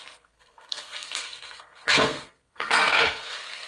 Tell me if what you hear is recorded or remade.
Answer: remade